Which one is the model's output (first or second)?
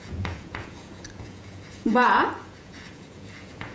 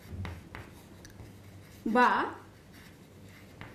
first